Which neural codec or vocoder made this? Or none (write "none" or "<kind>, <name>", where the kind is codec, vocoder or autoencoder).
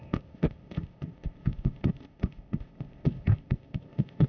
codec, ZipCodec